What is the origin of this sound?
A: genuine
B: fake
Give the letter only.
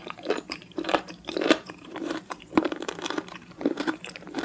B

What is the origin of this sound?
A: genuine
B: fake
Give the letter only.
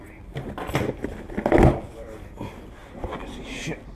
A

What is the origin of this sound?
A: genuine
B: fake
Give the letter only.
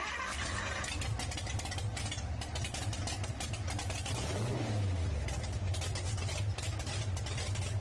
A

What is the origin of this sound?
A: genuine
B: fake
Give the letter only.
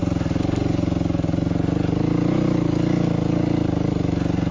A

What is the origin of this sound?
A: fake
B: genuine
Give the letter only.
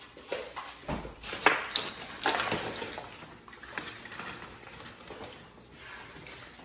B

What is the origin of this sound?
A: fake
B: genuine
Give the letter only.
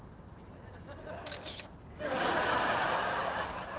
B